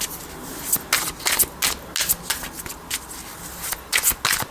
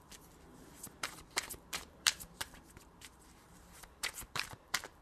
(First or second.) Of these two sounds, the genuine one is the first